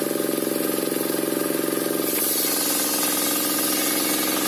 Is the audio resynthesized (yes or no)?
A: no